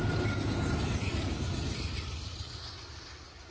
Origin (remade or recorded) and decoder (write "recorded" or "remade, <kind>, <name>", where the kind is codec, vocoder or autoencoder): recorded